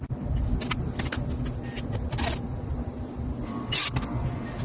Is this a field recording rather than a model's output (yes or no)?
yes